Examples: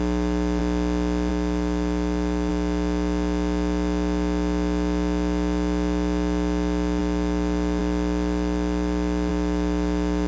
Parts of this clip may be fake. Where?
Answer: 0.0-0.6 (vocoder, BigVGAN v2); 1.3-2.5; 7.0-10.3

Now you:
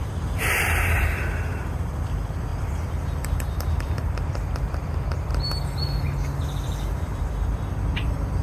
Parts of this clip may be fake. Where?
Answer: 0.0-5.3 (vocoder, BigVGAN v2); 7.2-8.4

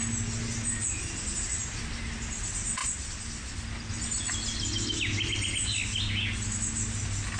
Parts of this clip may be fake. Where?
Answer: 2.8-3.9 (vocoder, BigVGAN v2)

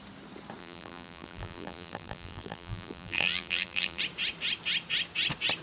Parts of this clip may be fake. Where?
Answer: 0.6-4.0 (vocoder, BigVGAN v2)

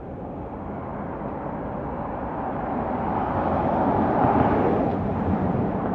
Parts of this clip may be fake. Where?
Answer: 4.9-5.5 (vocoder, BigVGAN v2)

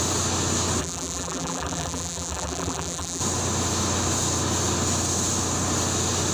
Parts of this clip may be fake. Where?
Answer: 0.8-3.2 (vocoder, BigVGAN v2)

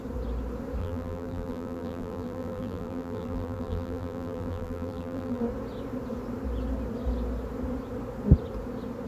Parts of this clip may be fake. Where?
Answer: 0.8-5.4 (vocoder, BigVGAN v2)

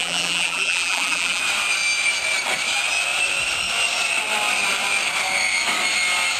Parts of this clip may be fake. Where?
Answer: 0.0-1.4 (vocoder, BigVGAN v2)